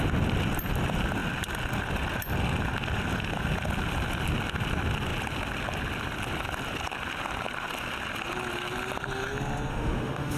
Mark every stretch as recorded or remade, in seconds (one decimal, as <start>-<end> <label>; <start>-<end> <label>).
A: 0.0-9.7 recorded; 9.7-10.4 remade

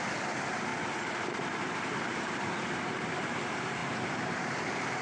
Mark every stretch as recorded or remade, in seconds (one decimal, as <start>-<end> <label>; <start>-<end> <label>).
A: 0.0-0.7 remade; 0.7-1.5 recorded; 1.5-5.0 remade

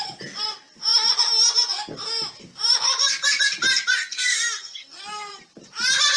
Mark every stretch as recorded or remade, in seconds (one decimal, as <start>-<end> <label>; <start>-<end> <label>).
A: 0.0-4.1 recorded; 4.1-5.4 remade; 5.4-6.2 recorded

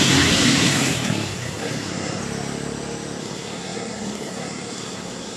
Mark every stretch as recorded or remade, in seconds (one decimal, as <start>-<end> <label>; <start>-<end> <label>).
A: 0.0-2.2 remade; 2.2-3.2 recorded; 3.2-5.4 remade

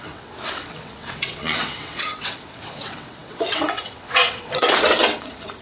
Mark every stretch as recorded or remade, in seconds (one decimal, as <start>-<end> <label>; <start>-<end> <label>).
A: 0.0-5.6 remade

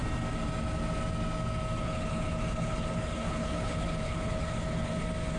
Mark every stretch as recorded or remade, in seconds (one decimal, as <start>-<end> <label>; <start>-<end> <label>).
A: 0.0-1.8 recorded; 1.8-5.0 remade; 5.0-5.4 recorded

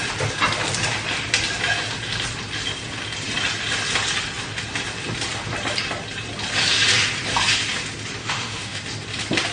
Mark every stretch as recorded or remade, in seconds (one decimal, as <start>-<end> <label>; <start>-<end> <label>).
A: 0.0-8.2 recorded; 8.2-8.8 remade; 8.8-9.5 recorded